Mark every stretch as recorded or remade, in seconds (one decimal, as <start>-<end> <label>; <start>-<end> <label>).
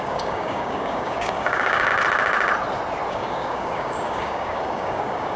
0.0-1.9 remade; 1.9-3.1 recorded; 3.1-5.4 remade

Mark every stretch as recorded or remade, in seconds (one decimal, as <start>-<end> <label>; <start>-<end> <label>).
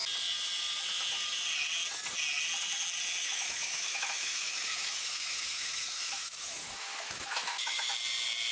0.0-3.2 recorded; 3.2-7.9 remade; 7.9-8.5 recorded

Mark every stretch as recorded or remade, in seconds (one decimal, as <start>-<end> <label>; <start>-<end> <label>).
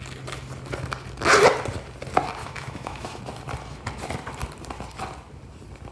0.0-2.4 recorded; 2.4-3.2 remade; 3.2-5.9 recorded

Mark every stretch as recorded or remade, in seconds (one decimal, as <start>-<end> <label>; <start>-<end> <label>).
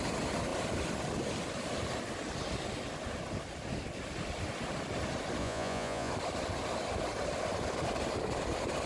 0.0-5.4 recorded; 5.4-6.1 remade; 6.1-8.9 recorded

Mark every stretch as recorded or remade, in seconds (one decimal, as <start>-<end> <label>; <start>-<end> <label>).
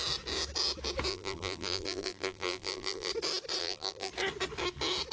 0.0-1.1 recorded; 1.1-3.1 remade; 3.1-3.6 recorded; 3.6-4.1 remade; 4.1-5.1 recorded